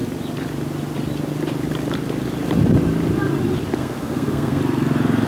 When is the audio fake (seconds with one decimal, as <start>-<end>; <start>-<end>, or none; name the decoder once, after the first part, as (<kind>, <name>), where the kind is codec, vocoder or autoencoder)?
3.8-4.6 (codec, SNAC)